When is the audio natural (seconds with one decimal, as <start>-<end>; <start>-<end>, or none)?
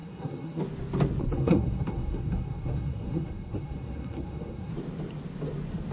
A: 0.6-1.2; 4.7-5.9